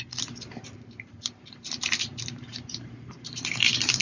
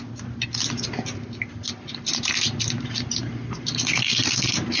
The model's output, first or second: first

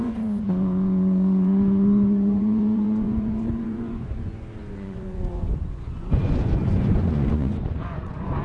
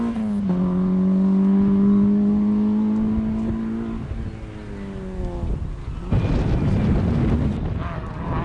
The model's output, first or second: first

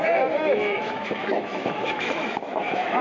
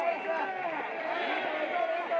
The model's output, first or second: first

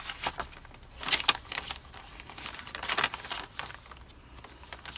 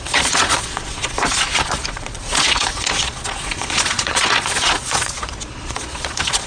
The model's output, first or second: second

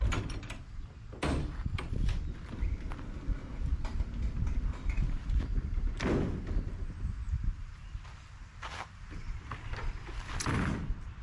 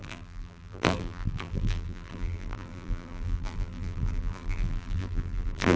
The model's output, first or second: second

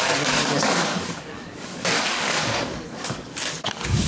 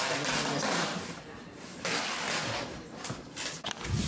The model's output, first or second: first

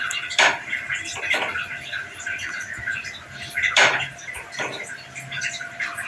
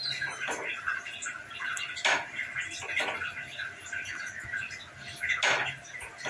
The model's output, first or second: first